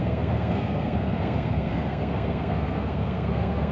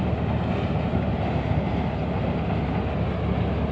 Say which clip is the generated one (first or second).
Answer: first